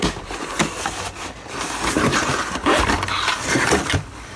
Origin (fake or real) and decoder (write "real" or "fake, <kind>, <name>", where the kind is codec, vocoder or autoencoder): fake, vocoder, BigVGAN v2